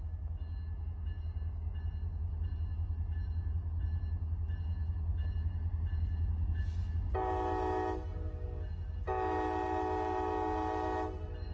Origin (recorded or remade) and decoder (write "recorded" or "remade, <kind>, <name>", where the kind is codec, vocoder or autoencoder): recorded